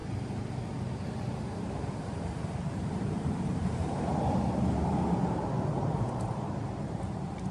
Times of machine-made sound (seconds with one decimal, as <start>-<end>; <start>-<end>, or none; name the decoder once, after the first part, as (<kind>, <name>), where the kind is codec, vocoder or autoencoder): 0.0-7.5 (vocoder, BigVGAN v2)